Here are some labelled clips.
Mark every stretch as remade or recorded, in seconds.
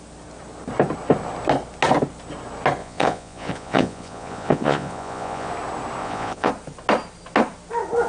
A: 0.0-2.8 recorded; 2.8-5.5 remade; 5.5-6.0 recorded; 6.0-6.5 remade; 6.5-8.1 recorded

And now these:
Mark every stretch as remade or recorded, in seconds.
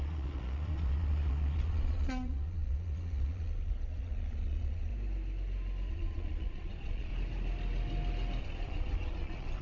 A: 0.0-4.9 remade; 4.9-5.9 recorded; 5.9-7.1 remade; 7.1-8.4 recorded; 8.4-9.6 remade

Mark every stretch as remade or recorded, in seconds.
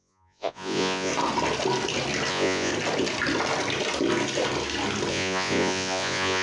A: 0.0-1.1 remade; 1.1-2.3 recorded; 2.3-2.7 remade; 2.7-5.1 recorded; 5.1-6.4 remade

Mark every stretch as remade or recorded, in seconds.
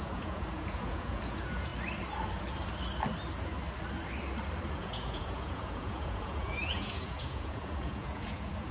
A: 0.0-1.7 remade; 1.7-4.7 recorded; 4.7-8.7 remade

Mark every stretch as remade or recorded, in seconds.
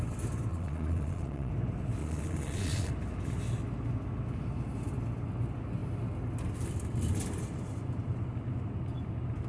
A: 0.0-0.5 recorded; 0.5-1.5 remade; 1.5-2.0 recorded; 2.0-2.9 remade; 2.9-9.5 recorded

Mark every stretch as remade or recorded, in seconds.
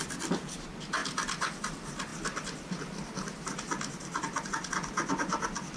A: 0.0-5.8 recorded